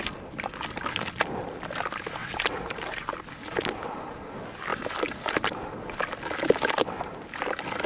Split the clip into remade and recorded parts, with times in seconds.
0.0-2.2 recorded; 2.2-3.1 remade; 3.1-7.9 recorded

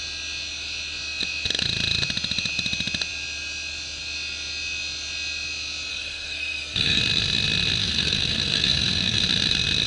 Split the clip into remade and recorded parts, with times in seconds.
0.0-5.9 recorded; 5.9-7.0 remade; 7.0-7.8 recorded; 7.8-9.2 remade; 9.2-9.9 recorded

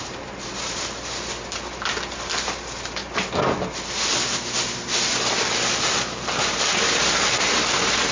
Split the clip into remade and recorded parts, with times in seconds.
0.0-8.1 recorded

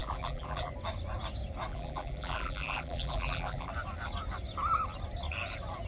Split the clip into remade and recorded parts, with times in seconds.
0.0-0.7 remade; 0.7-1.7 recorded; 1.7-3.7 remade; 3.7-5.9 recorded